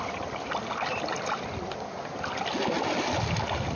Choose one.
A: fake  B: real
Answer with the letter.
B